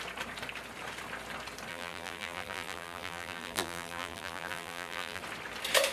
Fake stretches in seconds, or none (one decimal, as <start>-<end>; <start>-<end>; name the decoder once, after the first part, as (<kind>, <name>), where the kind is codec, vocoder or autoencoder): 1.7-5.2 (vocoder, BigVGAN v2)